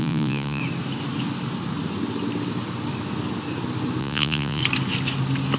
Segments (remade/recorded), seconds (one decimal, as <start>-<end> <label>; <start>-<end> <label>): 0.0-0.6 remade; 0.6-4.0 recorded; 4.0-4.6 remade; 4.6-5.6 recorded